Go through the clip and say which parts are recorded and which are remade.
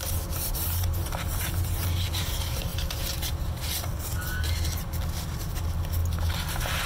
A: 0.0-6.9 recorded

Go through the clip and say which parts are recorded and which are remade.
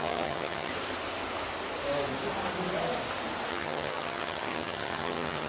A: 0.0-0.7 remade; 0.7-3.5 recorded; 3.5-5.5 remade